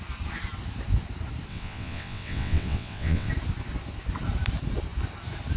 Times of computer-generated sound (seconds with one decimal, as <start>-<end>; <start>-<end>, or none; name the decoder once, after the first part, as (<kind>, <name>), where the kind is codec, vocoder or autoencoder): 1.5-3.3 (vocoder, WaveNeXt)

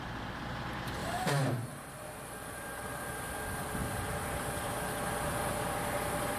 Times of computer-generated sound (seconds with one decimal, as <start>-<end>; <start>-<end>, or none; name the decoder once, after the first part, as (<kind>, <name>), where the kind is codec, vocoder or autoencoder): 1.0-3.0 (vocoder, BigVGAN v2)

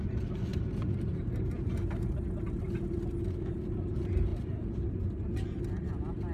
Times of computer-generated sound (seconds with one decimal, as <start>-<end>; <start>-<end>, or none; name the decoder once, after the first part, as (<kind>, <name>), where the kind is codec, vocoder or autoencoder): none

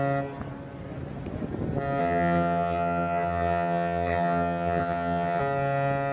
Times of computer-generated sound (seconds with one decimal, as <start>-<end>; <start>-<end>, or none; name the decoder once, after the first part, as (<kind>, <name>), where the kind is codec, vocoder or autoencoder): 2.0-5.4 (vocoder, HiFi-GAN)

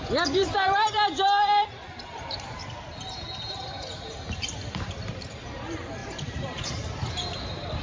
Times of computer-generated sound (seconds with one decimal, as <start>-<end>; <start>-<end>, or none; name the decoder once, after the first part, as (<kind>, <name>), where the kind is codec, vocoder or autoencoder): 0.0-2.6 (vocoder, BigVGAN v2); 3.5-7.8